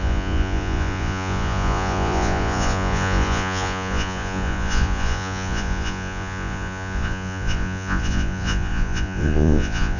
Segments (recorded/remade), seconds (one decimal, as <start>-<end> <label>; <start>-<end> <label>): 0.0-10.0 remade